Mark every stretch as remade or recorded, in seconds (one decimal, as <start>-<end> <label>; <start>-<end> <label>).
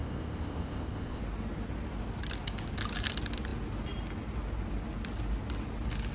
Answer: 0.0-1.2 remade; 1.2-6.1 recorded